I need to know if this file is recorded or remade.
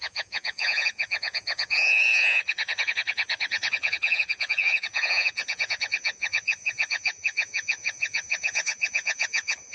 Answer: remade